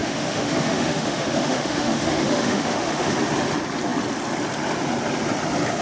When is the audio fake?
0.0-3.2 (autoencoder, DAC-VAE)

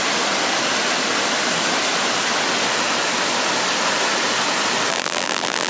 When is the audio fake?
4.9-5.7 (vocoder, BigVGAN v2)